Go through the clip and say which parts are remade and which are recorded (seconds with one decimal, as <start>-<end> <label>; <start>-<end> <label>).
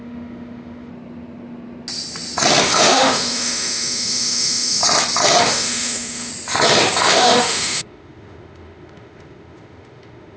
0.0-0.9 remade; 0.9-2.6 recorded; 2.6-4.8 remade; 4.8-5.4 recorded; 5.4-6.3 remade; 6.3-7.0 recorded; 7.0-10.4 remade